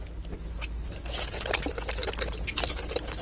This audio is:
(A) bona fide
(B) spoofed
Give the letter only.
A